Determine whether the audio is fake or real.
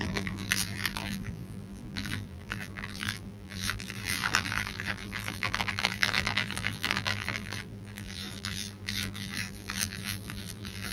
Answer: fake